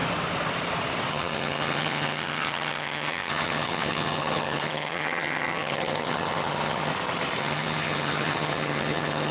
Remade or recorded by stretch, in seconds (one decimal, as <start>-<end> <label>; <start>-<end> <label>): 0.0-1.1 recorded; 1.1-6.9 remade; 6.9-7.4 recorded; 7.4-9.3 remade